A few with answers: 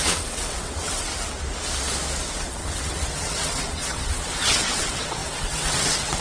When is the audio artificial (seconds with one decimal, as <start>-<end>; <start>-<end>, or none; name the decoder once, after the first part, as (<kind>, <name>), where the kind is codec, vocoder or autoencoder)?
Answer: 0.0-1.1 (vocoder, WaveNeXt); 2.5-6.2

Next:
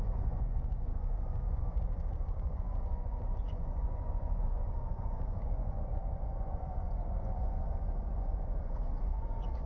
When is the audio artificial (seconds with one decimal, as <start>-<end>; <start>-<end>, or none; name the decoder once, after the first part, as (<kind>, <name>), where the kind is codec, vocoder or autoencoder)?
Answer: 0.0-9.7 (vocoder, Vocos)

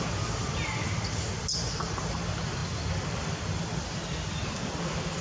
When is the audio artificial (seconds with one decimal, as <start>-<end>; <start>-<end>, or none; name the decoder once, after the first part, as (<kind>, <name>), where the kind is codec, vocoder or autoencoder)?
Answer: none

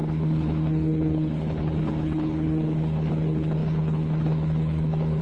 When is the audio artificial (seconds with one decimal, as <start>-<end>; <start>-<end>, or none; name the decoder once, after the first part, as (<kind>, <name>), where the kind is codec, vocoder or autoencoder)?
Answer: 0.0-5.2 (codec, HILCodec)